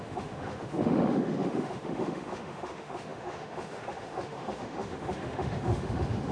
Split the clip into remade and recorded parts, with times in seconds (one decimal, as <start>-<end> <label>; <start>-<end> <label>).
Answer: 0.0-6.3 remade